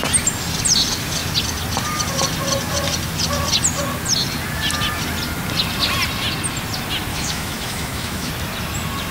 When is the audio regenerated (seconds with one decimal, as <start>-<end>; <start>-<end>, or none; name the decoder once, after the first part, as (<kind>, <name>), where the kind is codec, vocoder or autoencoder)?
7.1-8.3 (autoencoder, DAC-VAE)